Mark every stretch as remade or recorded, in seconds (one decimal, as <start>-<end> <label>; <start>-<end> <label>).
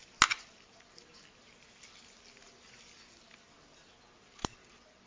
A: 0.0-5.1 recorded